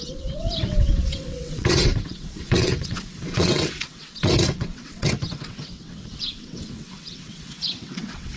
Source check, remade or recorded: remade